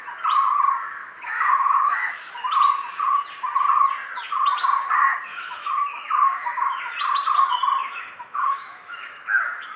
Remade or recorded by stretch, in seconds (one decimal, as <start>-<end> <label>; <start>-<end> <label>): 0.0-1.0 recorded; 1.0-2.0 remade; 2.0-5.3 recorded; 5.3-6.8 remade; 6.8-7.8 recorded; 7.8-9.4 remade; 9.4-9.8 recorded